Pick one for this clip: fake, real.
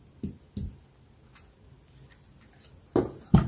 real